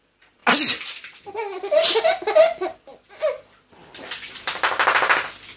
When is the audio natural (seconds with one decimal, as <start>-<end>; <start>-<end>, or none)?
0.0-5.6